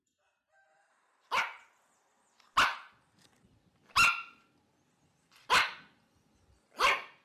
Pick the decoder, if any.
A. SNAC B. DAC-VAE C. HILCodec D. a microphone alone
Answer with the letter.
D